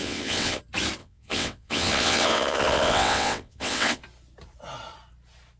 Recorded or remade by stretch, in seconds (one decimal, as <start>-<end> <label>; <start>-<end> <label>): 0.0-0.6 remade; 0.6-1.0 recorded; 1.0-4.0 remade; 4.0-5.6 recorded